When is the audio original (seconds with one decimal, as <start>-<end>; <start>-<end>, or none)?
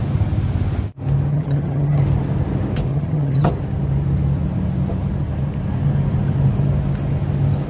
0.0-1.3; 2.0-2.9; 3.5-7.7